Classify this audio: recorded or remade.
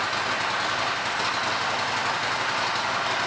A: recorded